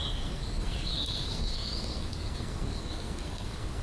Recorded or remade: remade